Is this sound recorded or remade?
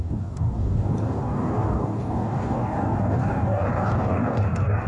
remade